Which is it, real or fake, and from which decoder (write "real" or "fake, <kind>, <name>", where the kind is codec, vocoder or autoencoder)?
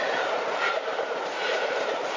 fake, vocoder, BigVGAN v2